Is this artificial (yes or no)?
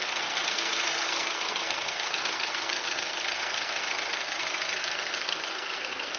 yes